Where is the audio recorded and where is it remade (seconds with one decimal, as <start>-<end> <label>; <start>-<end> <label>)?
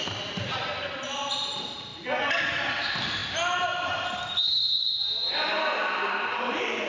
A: 0.0-1.9 remade; 1.9-2.8 recorded; 2.8-6.9 remade